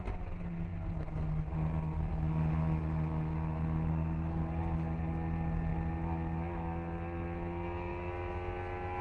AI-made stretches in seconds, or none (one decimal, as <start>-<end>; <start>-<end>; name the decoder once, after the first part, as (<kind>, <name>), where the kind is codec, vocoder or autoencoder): 3.9-4.4 (codec, SNAC)